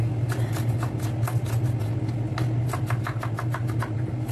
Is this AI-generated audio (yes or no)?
no